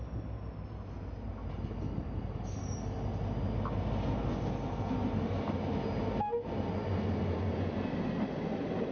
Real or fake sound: real